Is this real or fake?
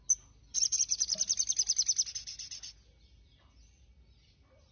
real